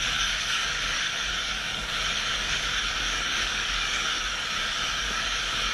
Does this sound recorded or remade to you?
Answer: remade